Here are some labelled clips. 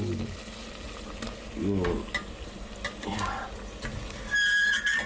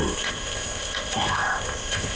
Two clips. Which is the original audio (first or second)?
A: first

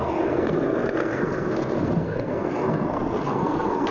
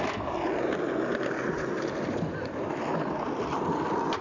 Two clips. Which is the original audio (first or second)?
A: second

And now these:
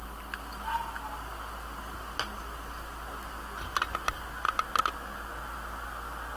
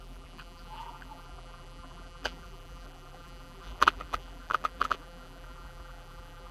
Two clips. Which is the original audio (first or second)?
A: first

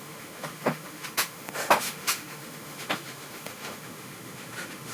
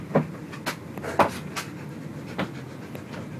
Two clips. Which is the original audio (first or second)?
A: second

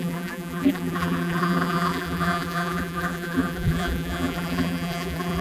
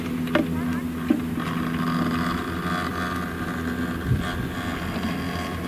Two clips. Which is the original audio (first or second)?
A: second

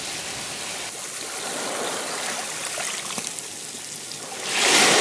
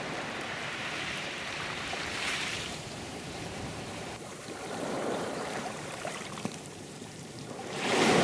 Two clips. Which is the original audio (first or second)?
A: first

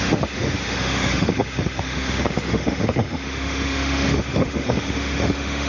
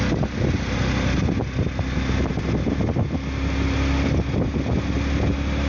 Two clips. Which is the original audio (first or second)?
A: second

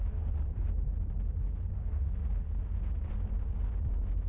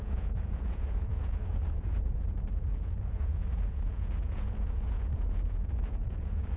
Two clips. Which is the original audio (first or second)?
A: first